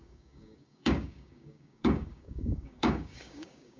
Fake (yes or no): yes